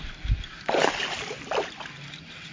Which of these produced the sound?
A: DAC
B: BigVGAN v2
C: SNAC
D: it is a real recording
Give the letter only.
D